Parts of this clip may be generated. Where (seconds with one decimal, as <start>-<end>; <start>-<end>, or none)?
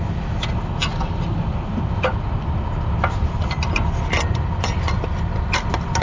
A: none